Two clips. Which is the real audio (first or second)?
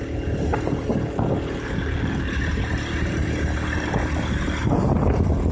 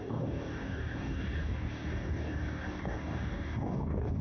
first